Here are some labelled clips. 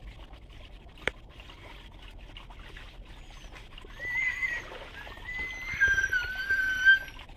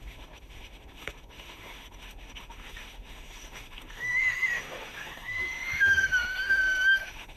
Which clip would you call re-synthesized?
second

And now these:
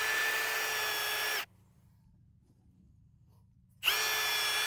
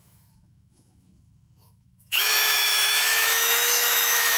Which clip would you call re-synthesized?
second